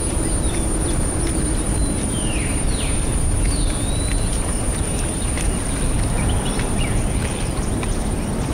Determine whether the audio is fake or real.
real